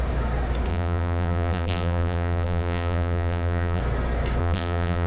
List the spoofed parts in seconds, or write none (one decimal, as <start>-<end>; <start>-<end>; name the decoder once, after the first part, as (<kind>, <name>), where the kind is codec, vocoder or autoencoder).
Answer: 0.7-3.8 (vocoder, BigVGAN v2); 4.4-5.1